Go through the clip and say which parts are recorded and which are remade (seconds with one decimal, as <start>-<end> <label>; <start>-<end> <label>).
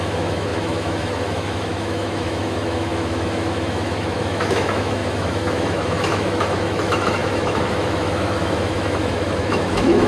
0.0-10.1 remade